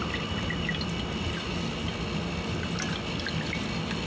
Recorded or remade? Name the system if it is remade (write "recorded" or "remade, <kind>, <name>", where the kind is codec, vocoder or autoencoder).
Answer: recorded